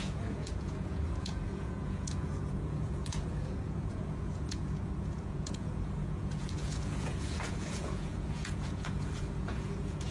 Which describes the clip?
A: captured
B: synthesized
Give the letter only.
B